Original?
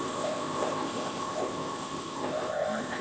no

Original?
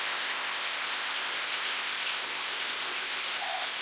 no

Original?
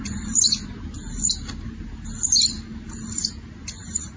yes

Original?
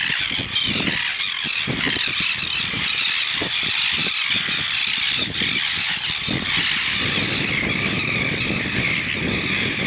yes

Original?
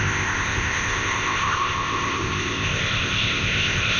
no